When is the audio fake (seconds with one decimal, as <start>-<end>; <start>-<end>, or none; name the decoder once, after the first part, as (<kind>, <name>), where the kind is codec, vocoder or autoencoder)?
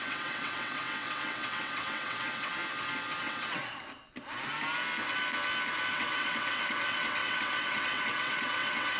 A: 0.0-2.6 (vocoder, WaveNeXt); 3.2-3.6; 5.9-9.0